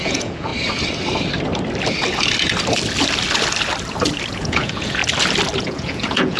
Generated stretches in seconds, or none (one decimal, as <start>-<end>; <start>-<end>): 0.0-0.5; 4.3-5.0; 5.6-6.4